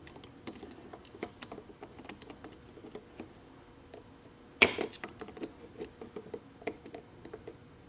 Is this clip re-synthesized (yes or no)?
no